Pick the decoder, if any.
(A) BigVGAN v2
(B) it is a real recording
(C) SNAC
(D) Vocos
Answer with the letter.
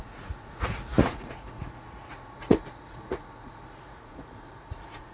D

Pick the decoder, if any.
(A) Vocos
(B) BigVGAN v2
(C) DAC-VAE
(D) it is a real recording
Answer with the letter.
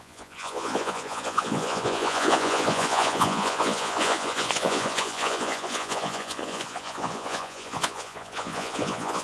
A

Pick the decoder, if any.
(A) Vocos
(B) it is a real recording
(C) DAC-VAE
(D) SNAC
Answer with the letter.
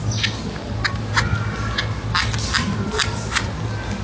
B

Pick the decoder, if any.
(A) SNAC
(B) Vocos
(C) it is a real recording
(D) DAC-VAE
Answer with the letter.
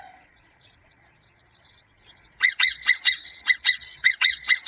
B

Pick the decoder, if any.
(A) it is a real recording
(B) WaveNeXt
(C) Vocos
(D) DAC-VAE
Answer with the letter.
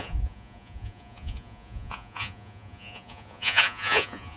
C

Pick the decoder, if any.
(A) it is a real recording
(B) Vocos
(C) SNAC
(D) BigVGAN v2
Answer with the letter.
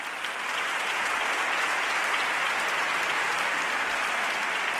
A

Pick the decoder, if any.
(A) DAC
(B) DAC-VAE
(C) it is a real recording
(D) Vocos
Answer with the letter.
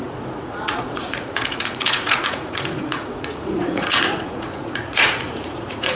D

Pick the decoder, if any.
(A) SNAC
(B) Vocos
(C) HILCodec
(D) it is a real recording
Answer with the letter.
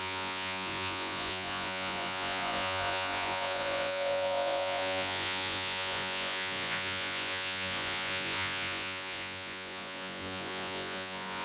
B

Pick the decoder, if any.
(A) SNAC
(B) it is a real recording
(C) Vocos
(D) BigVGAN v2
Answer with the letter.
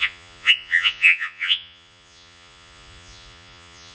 C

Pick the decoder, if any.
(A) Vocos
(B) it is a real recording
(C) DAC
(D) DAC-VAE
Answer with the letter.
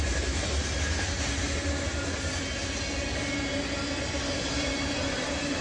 B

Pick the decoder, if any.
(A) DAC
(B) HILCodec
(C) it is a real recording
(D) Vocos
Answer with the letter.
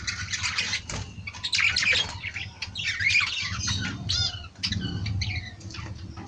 C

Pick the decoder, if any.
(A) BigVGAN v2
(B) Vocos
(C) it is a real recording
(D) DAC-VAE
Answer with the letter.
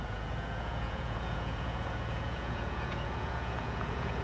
B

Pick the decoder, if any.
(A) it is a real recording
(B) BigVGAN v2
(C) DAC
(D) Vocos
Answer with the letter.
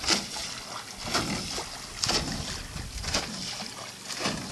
A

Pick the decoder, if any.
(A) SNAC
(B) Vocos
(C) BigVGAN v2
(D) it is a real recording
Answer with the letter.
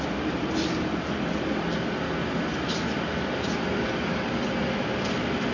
D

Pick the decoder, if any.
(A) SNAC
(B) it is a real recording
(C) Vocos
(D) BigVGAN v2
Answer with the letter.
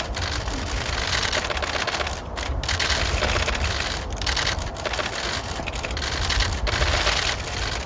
B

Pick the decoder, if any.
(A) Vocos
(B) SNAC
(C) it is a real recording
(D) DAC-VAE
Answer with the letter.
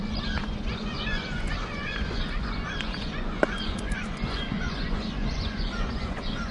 A